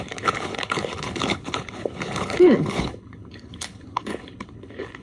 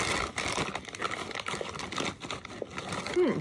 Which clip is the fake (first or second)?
first